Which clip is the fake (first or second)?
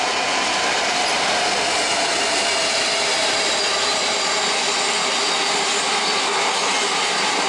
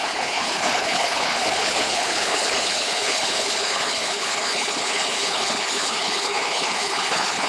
second